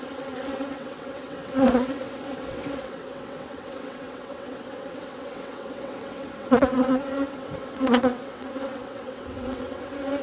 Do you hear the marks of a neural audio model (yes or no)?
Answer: yes